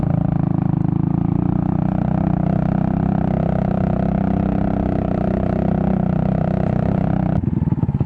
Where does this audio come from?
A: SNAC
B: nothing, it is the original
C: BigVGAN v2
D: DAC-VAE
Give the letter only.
B